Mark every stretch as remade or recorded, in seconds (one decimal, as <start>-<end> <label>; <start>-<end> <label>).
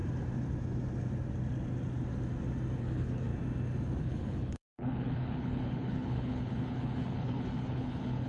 0.0-2.8 recorded; 2.8-3.3 remade; 3.3-4.0 recorded; 4.0-8.3 remade